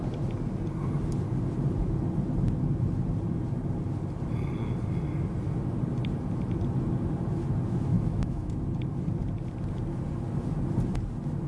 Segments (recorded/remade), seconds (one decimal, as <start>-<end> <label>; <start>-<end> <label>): 0.0-7.9 recorded; 7.9-8.5 remade; 8.5-11.5 recorded